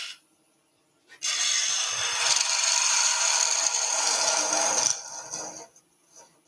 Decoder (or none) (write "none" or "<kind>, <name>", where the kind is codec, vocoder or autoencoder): none